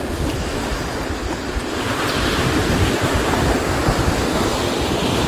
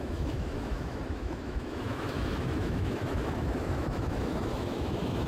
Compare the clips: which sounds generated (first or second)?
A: second